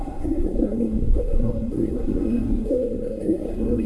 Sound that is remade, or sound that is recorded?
remade